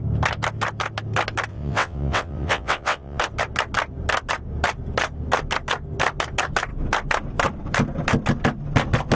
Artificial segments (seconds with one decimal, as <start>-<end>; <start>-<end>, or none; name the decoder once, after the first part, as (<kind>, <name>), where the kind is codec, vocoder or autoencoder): 1.5-3.2 (vocoder, WaveNeXt)